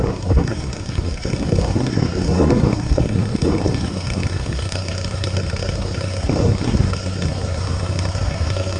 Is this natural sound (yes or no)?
no